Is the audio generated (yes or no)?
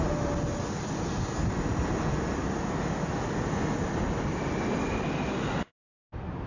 no